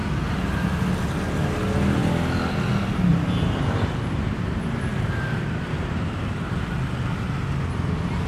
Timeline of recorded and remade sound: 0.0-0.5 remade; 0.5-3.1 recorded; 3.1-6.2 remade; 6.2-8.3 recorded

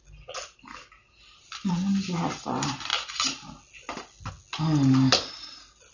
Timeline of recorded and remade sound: 0.0-5.9 recorded